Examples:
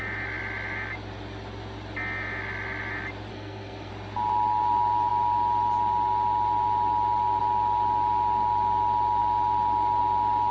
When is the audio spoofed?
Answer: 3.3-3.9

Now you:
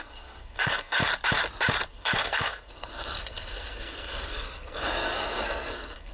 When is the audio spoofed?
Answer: 0.0-1.0; 1.9-6.1